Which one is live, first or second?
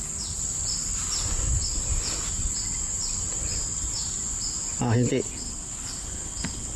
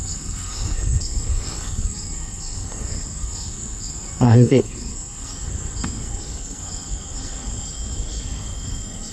first